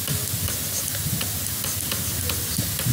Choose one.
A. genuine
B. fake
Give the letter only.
A